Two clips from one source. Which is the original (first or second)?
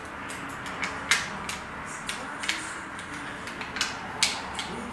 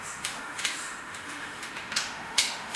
first